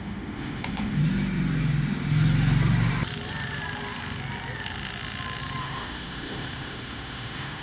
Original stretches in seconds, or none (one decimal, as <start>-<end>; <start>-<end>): 1.0-5.6